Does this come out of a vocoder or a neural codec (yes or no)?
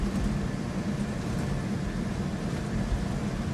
no